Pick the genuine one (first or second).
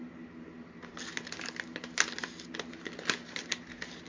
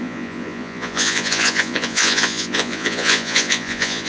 first